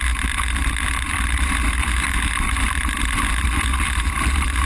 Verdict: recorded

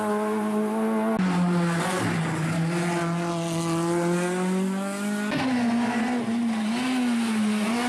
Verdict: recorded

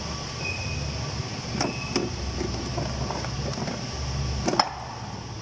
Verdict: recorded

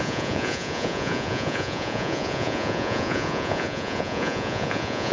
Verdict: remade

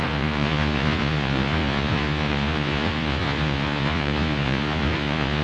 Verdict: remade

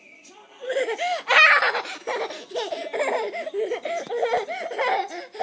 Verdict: recorded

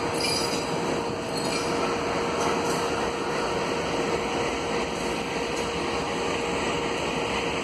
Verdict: recorded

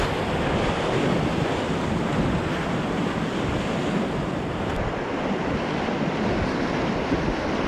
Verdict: recorded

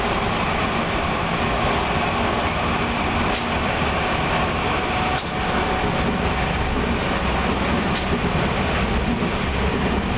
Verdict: recorded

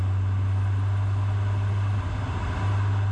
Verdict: recorded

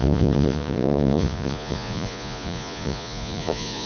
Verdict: remade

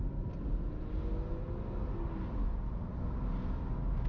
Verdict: recorded